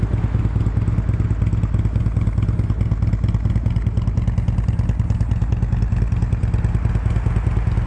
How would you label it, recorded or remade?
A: recorded